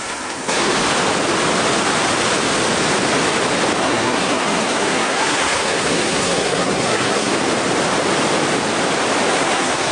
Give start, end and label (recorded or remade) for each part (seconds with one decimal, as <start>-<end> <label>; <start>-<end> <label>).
0.0-0.7 remade; 0.7-3.8 recorded; 3.8-7.3 remade; 7.3-9.3 recorded; 9.3-9.9 remade